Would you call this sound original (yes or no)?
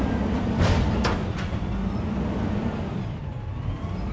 yes